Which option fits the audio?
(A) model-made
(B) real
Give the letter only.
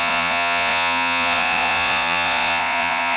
A